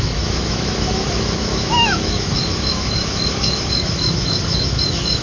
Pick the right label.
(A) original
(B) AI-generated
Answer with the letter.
B